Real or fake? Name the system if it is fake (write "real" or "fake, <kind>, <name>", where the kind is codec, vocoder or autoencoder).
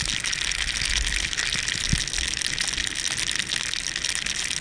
real